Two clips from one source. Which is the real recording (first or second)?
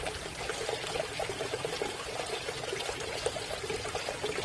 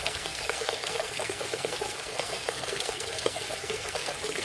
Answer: first